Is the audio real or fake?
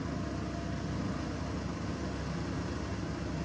real